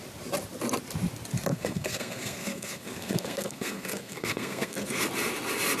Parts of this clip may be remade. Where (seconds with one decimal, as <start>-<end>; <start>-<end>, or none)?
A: 1.5-5.0